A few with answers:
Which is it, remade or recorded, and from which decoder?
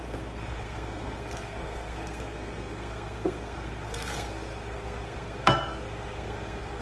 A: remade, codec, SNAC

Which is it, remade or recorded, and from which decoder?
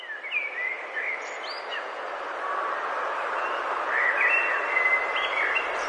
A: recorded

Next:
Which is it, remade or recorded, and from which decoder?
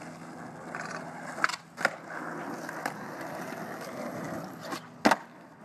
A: recorded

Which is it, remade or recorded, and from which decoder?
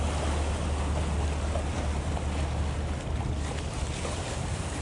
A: recorded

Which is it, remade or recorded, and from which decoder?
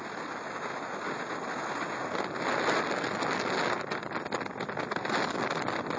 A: recorded